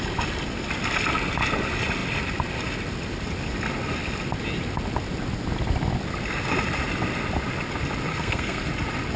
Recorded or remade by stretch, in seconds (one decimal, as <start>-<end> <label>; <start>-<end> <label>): 0.0-8.1 recorded; 8.1-8.7 remade; 8.7-9.2 recorded